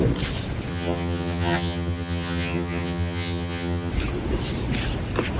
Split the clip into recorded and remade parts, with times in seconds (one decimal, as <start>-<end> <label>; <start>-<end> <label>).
0.0-0.7 recorded; 0.7-3.9 remade; 3.9-5.4 recorded